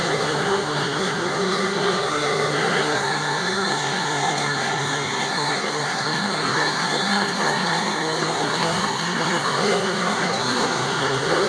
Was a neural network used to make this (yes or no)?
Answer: yes